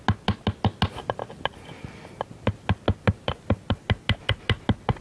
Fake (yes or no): no